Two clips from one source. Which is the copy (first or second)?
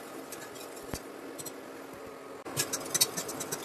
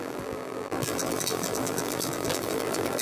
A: second